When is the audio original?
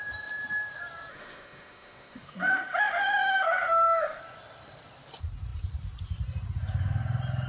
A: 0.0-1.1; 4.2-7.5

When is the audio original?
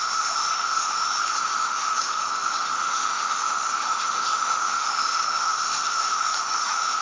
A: none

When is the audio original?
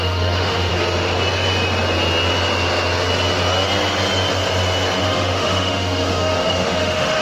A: 0.7-5.0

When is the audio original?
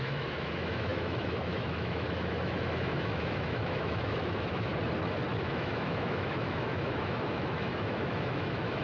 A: 4.7-5.4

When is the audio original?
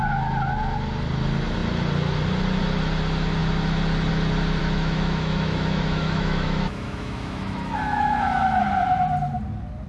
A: 0.0-4.6; 8.6-9.9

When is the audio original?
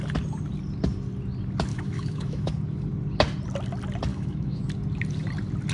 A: 0.0-1.7; 2.5-4.1; 4.6-5.7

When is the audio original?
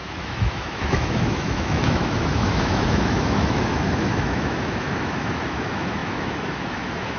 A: none